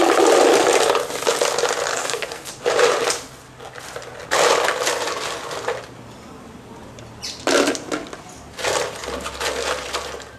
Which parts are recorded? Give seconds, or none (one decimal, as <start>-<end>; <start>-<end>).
0.0-1.9; 2.5-10.4